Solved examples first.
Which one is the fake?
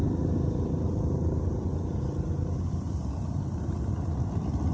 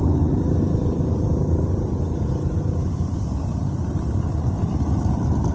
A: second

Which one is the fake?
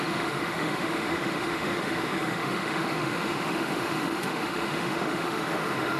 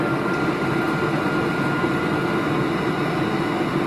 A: first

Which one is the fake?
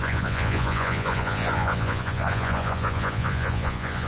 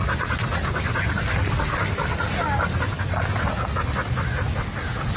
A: first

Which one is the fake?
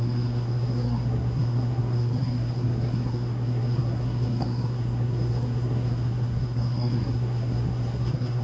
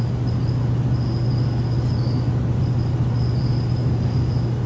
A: first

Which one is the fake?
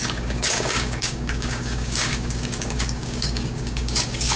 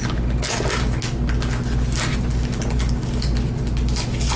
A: first